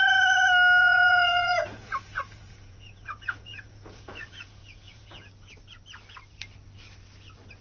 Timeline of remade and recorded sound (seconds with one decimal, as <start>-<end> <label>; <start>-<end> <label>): 0.0-0.8 recorded; 0.8-5.3 remade; 5.3-7.6 recorded